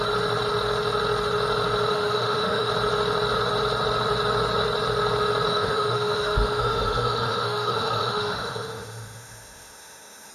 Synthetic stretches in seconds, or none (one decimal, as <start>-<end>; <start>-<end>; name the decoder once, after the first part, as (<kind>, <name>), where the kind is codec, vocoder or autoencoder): 1.9-2.7 (autoencoder, DAC-VAE); 5.5-10.3

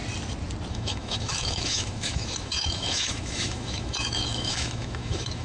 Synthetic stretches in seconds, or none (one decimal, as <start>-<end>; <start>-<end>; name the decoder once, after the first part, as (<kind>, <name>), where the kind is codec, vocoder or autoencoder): 0.7-5.4 (autoencoder, DAC-VAE)

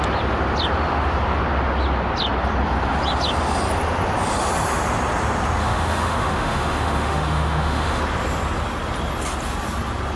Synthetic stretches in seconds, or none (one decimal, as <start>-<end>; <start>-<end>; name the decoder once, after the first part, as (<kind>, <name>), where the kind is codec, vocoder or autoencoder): 5.6-8.0 (autoencoder, DAC-VAE)

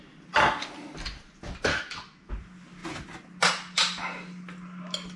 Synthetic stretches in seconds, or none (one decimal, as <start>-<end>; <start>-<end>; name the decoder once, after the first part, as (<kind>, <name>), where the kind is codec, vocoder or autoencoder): 1.7-2.3 (autoencoder, DAC-VAE)

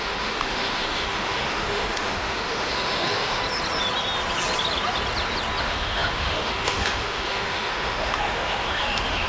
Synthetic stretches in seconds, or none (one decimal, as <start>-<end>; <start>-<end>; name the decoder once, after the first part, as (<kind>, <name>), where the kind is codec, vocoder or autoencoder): 0.0-3.4 (autoencoder, DAC-VAE); 5.6-9.3

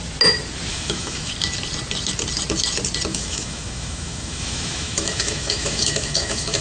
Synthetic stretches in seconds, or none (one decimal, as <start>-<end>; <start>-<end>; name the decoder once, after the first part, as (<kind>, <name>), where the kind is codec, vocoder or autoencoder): 0.7-1.3 (autoencoder, DAC-VAE); 3.1-6.6

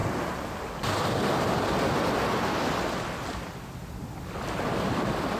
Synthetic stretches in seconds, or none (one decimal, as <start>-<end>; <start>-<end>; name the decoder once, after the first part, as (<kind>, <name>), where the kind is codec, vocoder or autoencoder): none

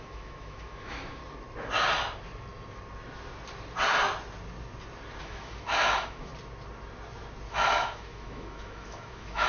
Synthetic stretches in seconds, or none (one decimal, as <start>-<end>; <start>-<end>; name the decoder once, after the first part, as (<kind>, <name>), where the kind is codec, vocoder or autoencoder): 0.0-1.2 (autoencoder, DAC-VAE); 5.2-6.3; 7.5-9.5